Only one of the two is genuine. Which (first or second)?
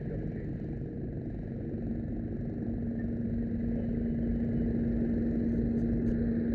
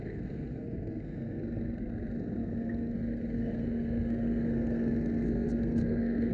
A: first